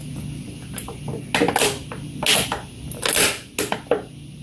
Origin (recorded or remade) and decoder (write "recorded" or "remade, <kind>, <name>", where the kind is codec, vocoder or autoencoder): recorded